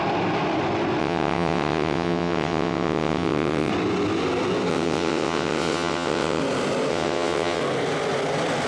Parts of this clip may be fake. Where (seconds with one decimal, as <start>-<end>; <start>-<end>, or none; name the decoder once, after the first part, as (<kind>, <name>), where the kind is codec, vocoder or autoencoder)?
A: 1.0-3.7 (vocoder, WaveNeXt); 4.7-6.4; 6.9-7.6

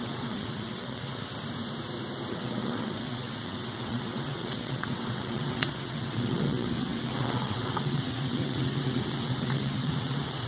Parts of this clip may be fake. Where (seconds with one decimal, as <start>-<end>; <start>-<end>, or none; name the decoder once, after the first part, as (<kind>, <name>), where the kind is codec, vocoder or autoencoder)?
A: 0.0-1.3 (vocoder, WaveNeXt); 2.3-10.5

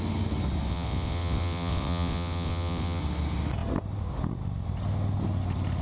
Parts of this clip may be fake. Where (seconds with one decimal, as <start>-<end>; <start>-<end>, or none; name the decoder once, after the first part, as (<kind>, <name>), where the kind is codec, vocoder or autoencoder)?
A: 0.7-3.0 (vocoder, WaveNeXt)

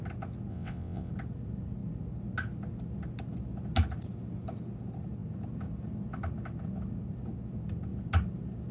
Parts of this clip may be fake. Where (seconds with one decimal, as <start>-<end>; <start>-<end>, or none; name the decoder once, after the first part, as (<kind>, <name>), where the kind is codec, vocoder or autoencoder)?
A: 0.5-1.1 (vocoder, WaveNeXt)

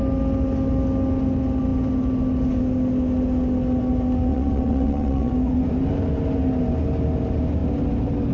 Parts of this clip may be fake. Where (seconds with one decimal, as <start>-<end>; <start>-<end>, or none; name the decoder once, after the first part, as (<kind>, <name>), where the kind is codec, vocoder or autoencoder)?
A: 4.3-5.3 (vocoder, WaveNeXt)